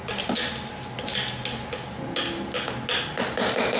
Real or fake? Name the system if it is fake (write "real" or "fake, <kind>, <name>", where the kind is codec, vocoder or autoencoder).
real